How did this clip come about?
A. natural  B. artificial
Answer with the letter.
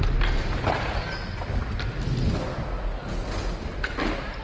A